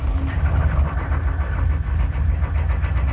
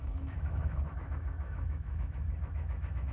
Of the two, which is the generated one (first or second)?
second